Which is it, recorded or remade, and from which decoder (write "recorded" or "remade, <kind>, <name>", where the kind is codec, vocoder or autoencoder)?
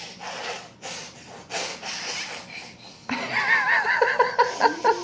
recorded